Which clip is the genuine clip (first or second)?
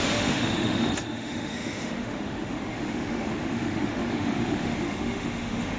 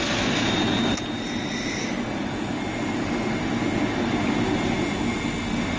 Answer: second